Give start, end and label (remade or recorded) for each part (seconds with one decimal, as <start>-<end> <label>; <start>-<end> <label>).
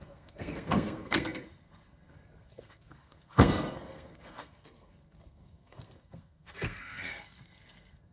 0.0-8.1 remade